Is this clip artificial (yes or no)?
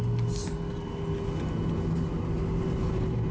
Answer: no